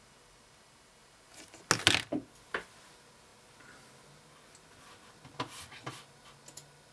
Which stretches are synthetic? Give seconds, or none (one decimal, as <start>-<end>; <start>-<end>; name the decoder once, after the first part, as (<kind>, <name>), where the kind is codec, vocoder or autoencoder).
none

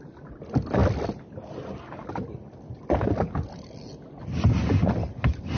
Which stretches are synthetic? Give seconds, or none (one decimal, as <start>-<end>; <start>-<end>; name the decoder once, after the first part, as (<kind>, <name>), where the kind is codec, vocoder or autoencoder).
none

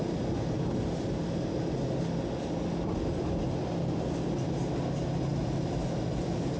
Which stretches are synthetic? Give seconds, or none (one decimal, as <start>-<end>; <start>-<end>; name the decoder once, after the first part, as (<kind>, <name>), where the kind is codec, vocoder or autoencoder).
none

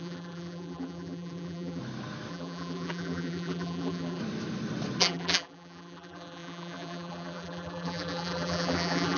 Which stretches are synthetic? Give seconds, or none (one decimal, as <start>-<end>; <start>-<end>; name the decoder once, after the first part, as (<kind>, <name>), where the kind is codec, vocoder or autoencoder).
0.0-1.8 (vocoder, BigVGAN v2); 2.3-4.2; 5.0-9.2

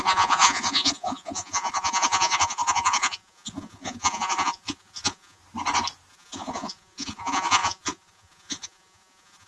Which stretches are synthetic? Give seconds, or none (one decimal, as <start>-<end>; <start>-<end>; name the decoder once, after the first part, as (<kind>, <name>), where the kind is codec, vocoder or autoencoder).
0.0-5.4 (vocoder, Vocos); 6.1-9.5

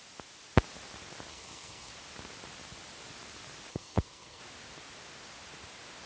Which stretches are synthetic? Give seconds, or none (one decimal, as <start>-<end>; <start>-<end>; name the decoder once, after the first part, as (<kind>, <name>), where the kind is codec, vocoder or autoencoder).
1.3-1.9 (codec, SNAC); 3.7-4.4

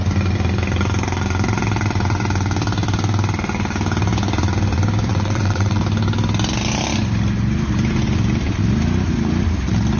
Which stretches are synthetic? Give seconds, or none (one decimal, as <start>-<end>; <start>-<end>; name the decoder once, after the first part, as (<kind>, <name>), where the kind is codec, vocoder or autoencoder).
5.1-5.8 (vocoder, WaveNeXt)